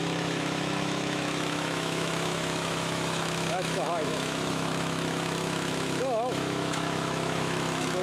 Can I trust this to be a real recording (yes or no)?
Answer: no